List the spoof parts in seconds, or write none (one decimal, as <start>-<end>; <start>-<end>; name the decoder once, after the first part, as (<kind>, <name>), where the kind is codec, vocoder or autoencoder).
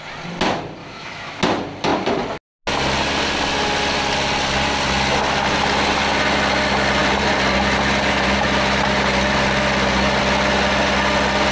0.8-1.4 (autoencoder, DAC-VAE)